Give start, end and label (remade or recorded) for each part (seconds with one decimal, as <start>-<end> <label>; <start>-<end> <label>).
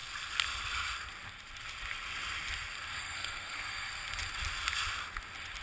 0.0-3.0 recorded; 3.0-3.9 remade; 3.9-5.6 recorded